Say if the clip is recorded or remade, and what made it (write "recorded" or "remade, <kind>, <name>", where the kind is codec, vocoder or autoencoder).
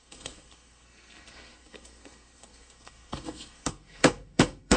remade, codec, SNAC